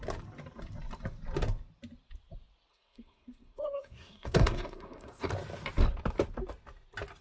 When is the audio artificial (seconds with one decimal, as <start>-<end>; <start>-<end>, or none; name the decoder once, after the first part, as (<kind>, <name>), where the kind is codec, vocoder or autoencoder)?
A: 2.7-5.3 (codec, SNAC)